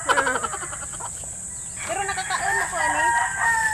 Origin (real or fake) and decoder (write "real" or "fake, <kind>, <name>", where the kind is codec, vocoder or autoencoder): real